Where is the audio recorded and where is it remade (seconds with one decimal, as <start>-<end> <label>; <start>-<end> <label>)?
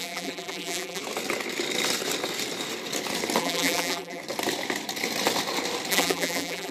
0.0-1.0 remade; 1.0-3.4 recorded; 3.4-4.2 remade; 4.2-5.9 recorded; 5.9-6.7 remade